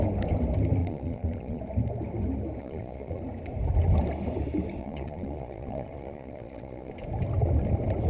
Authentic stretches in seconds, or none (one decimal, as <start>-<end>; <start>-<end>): 0.0-0.8; 1.6-2.6; 3.2-4.8; 6.9-8.1